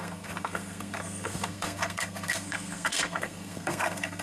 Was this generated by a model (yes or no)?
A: yes